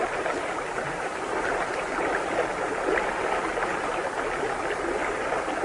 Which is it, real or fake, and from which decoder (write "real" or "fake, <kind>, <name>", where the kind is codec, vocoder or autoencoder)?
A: real